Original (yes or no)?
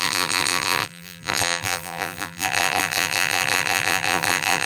no